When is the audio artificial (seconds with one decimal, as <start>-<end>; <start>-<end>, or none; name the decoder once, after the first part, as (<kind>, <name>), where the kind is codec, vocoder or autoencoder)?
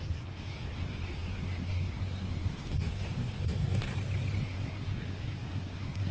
0.0-3.9 (codec, SNAC); 4.4-6.1